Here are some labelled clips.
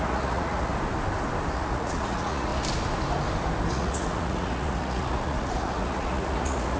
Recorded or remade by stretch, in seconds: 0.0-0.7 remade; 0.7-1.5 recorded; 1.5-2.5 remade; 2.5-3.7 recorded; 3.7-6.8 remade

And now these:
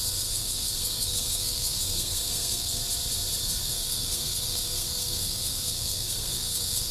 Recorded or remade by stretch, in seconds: 0.0-2.8 remade; 2.8-3.4 recorded; 3.4-6.9 remade

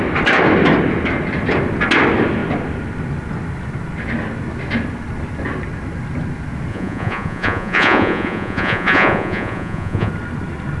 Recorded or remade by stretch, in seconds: 0.0-6.7 recorded; 6.7-10.1 remade; 10.1-10.8 recorded

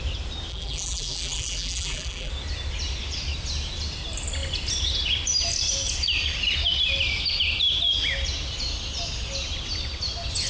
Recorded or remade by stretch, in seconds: 0.0-0.5 recorded; 0.5-2.3 remade; 2.3-10.5 recorded

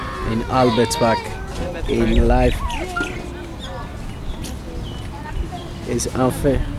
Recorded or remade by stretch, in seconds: 0.0-1.5 recorded; 1.5-2.2 remade; 2.2-6.8 recorded

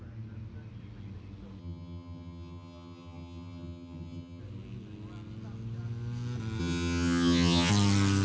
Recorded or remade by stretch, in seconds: 0.0-1.6 recorded; 1.6-4.4 remade; 4.4-6.6 recorded; 6.6-7.7 remade; 7.7-8.2 recorded

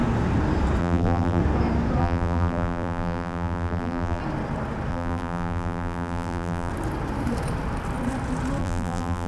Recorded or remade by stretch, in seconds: 0.0-0.8 recorded; 0.8-1.4 remade; 1.4-2.0 recorded; 2.0-4.2 remade; 4.2-4.9 recorded; 4.9-6.7 remade; 6.7-8.6 recorded; 8.6-9.3 remade

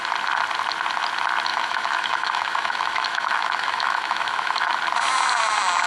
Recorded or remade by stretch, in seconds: 0.0-1.5 recorded; 1.5-4.7 remade; 4.7-5.9 recorded